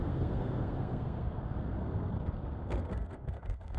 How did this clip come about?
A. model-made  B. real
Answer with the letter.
A